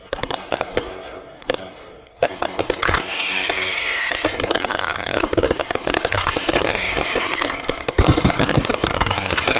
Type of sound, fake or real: fake